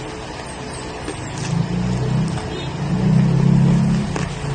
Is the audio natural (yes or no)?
yes